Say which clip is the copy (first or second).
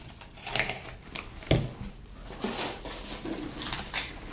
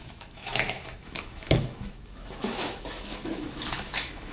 second